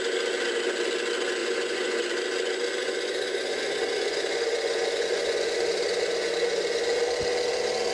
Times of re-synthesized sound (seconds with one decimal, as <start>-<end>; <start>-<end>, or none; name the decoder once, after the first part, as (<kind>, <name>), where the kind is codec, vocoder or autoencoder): 1.4-2.0 (vocoder, Vocos); 2.8-7.0